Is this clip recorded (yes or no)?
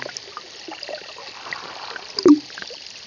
yes